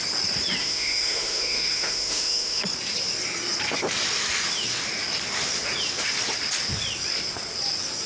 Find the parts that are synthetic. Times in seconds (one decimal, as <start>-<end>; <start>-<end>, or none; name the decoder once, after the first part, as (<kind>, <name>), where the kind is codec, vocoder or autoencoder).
0.6-2.6 (autoencoder, DAC-VAE)